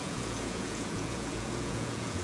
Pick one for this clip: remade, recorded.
remade